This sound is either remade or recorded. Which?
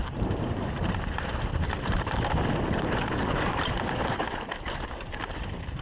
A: remade